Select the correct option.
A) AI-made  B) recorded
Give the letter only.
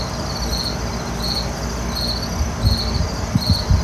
B